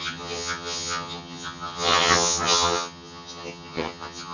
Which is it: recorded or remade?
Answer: remade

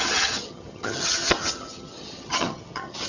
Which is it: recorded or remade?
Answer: remade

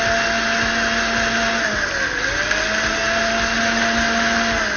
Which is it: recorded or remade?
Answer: recorded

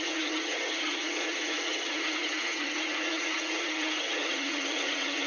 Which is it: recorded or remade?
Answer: remade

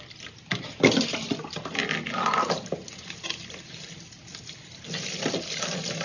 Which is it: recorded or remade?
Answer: recorded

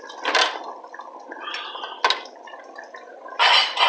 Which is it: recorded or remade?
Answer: recorded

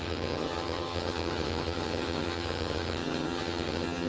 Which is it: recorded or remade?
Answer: remade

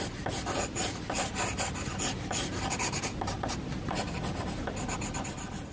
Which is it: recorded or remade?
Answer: recorded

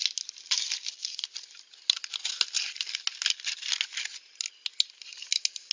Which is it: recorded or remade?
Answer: recorded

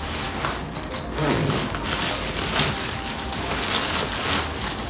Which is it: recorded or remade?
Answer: recorded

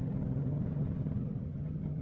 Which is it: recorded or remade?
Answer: remade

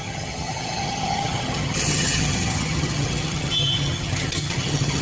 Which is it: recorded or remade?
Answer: remade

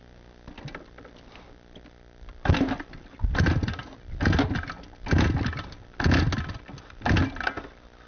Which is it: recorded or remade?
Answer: recorded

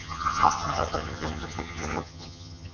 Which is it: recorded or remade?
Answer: remade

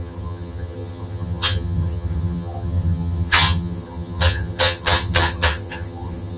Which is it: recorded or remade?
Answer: remade